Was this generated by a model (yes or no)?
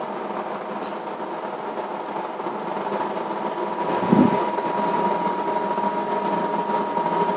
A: no